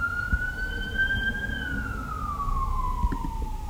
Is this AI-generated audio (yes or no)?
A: no